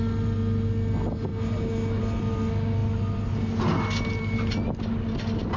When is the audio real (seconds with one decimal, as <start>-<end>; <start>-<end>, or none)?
0.0-5.6